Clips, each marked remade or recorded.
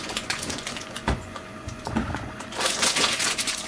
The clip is remade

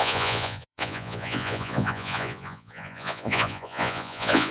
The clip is remade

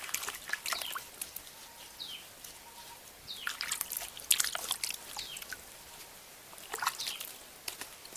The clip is recorded